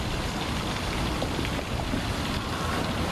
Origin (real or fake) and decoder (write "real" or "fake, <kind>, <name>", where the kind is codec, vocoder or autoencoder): fake, vocoder, BigVGAN v2